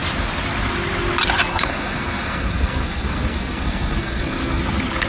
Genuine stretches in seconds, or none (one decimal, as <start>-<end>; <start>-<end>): 0.0-1.5; 4.6-5.1